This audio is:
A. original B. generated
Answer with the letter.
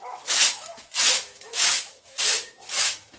B